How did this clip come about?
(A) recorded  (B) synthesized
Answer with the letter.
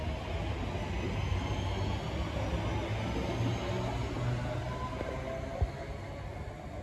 A